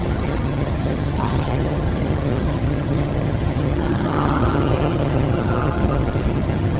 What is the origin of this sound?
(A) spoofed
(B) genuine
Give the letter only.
A